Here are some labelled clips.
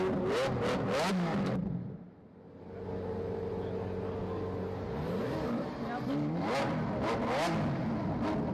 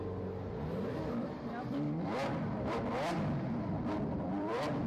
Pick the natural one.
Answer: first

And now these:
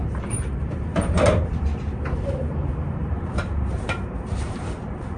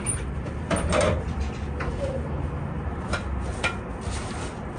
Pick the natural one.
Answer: second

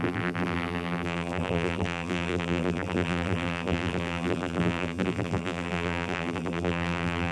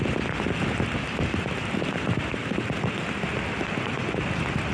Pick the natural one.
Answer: second